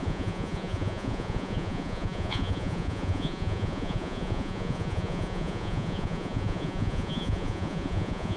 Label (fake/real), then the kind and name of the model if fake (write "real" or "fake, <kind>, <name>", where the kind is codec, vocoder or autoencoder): fake, vocoder, Vocos